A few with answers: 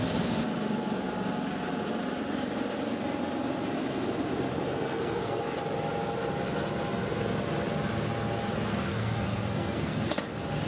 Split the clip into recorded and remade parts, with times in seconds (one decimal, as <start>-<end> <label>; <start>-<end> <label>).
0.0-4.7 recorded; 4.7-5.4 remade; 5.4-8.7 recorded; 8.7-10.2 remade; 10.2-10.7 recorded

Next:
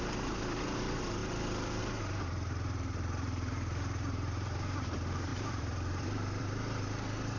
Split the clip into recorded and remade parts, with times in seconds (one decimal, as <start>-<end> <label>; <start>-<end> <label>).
0.0-7.4 remade

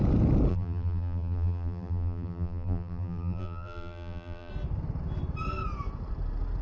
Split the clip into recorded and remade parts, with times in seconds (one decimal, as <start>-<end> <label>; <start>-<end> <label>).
0.0-0.5 recorded; 0.5-4.5 remade; 4.5-6.6 recorded

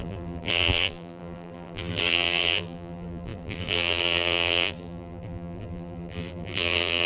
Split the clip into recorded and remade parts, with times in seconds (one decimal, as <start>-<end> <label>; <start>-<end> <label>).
0.0-7.1 remade

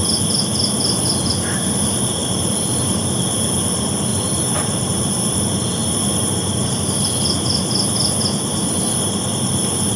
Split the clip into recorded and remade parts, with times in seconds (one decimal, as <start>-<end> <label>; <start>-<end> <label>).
0.0-2.2 recorded; 2.2-3.0 remade; 3.0-4.1 recorded; 4.1-6.8 remade; 6.8-10.0 recorded

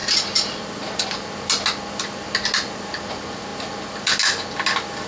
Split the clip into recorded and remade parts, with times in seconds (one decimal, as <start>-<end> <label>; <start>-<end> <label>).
0.0-5.1 recorded

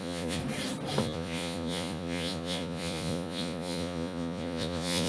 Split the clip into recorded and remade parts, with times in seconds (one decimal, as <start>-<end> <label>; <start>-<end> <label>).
0.0-0.4 remade; 0.4-1.0 recorded; 1.0-5.1 remade

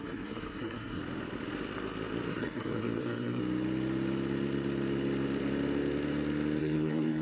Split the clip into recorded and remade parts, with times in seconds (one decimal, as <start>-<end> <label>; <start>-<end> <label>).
0.0-1.0 remade; 1.0-2.3 recorded; 2.3-3.4 remade; 3.4-6.6 recorded; 6.6-7.2 remade